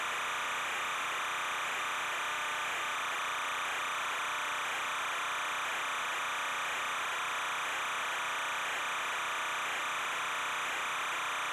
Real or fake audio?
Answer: real